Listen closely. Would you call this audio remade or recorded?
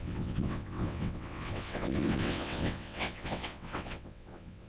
remade